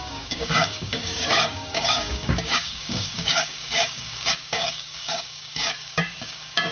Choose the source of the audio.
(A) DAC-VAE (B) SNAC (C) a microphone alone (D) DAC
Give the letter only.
D